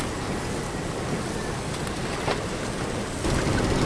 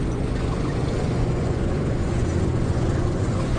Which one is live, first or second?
first